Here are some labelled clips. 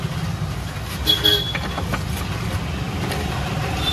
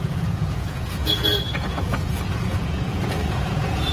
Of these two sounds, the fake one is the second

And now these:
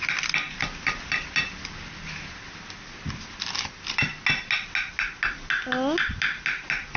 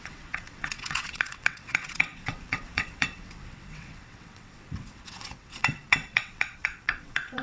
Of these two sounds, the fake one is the second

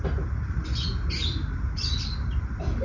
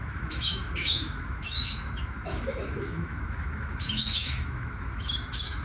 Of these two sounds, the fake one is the second